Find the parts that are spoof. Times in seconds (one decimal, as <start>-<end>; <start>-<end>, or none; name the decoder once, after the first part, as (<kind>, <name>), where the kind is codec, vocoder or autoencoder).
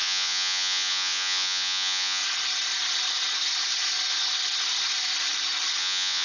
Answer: 0.0-2.2 (vocoder, Vocos); 5.8-6.2